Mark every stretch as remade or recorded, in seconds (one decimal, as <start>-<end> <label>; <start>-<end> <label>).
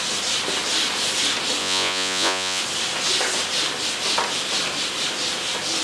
0.0-1.6 recorded; 1.6-2.6 remade; 2.6-5.8 recorded